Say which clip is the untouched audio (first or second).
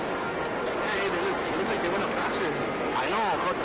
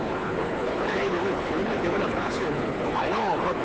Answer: first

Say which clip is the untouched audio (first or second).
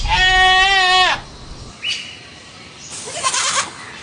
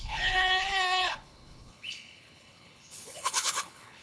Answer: first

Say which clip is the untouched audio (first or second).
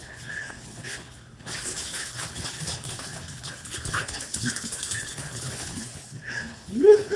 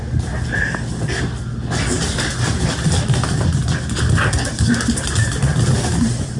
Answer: second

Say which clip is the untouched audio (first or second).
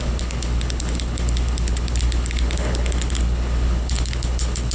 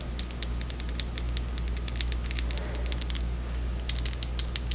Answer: second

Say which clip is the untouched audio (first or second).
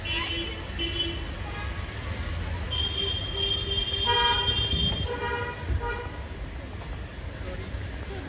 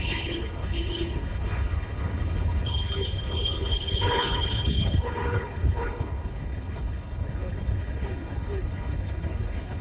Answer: first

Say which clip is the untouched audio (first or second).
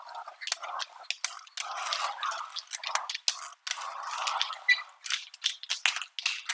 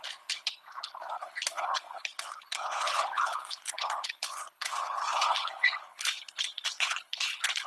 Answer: first